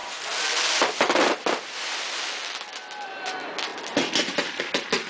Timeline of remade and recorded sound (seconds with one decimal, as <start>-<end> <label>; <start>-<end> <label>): 0.0-5.1 recorded